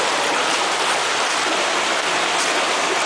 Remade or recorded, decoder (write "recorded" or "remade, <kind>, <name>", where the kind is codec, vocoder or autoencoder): recorded